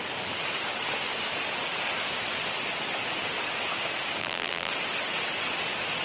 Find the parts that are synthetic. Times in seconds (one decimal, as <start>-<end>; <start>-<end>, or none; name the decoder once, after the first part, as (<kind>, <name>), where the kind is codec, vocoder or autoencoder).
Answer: 4.2-4.7 (vocoder, BigVGAN v2)